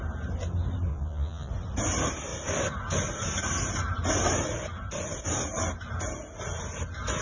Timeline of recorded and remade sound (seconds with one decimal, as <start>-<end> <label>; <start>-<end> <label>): 0.0-0.9 recorded; 0.9-1.5 remade; 1.5-7.2 recorded